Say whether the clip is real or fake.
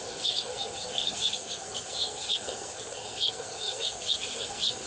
fake